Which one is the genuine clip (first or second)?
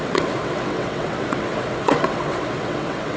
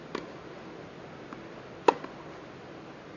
second